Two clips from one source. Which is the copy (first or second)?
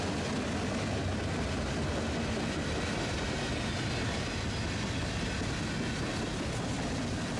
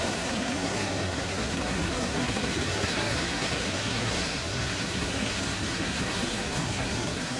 second